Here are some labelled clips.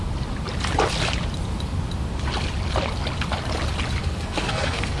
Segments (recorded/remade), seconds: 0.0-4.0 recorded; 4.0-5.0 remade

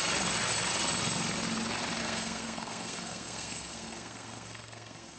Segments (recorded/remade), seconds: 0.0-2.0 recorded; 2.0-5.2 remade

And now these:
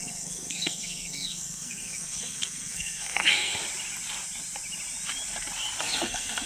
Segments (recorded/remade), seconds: 0.0-3.6 remade; 3.6-5.8 recorded; 5.8-6.5 remade

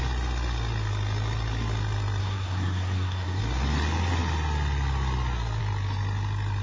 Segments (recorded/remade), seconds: 0.0-2.2 recorded; 2.2-3.4 remade; 3.4-6.6 recorded